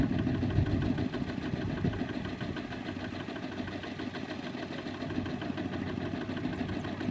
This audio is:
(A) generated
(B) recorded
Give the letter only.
B